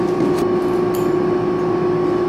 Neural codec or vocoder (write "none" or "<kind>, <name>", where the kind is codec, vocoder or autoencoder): none